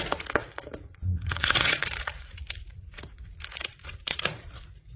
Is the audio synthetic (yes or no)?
yes